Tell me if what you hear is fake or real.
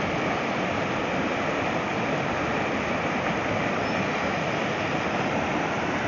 real